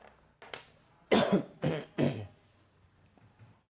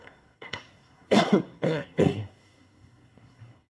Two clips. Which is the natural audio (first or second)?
first